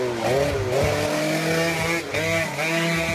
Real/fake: real